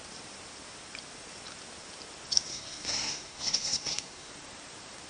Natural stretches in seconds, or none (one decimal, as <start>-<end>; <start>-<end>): 0.0-2.5; 4.3-5.1